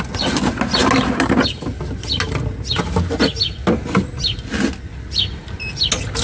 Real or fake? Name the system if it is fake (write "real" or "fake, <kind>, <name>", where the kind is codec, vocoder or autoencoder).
real